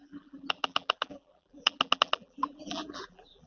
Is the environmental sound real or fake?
fake